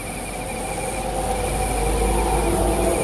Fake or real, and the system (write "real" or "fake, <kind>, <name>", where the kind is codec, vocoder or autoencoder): real